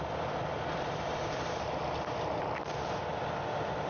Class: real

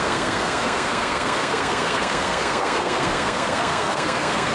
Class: fake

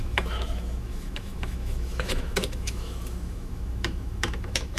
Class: fake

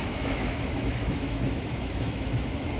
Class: fake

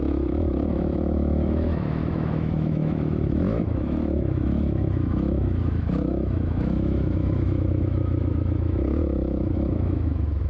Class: fake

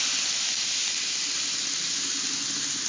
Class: real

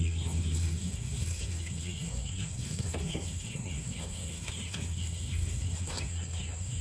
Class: fake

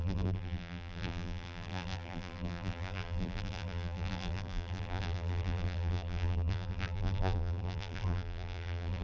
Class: fake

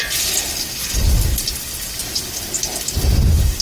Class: real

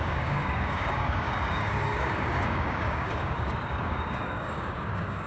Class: fake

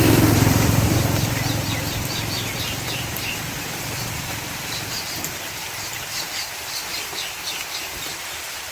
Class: fake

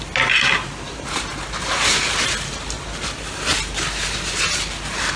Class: real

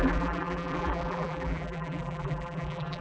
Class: fake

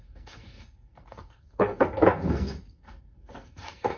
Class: fake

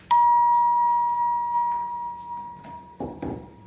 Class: real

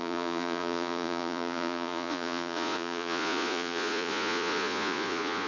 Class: fake